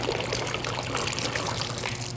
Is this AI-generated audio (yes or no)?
no